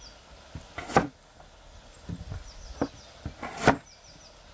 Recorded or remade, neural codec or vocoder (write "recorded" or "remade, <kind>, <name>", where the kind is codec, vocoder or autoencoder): recorded